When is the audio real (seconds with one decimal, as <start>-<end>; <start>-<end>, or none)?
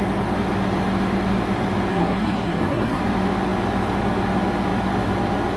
0.0-1.9; 3.0-5.6